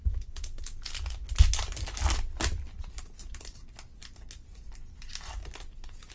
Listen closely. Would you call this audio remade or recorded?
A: recorded